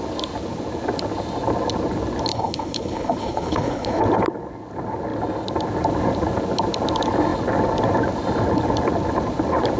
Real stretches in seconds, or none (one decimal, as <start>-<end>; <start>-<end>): 0.0-2.3; 4.0-9.8